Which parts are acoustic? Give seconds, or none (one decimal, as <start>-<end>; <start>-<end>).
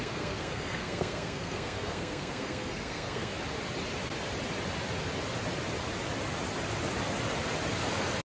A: 3.3-8.3